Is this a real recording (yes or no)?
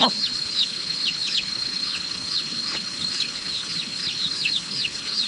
no